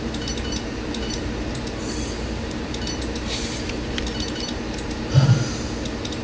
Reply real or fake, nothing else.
fake